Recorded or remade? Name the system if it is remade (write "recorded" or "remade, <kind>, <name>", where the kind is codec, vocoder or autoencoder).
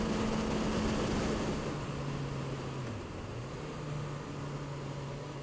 recorded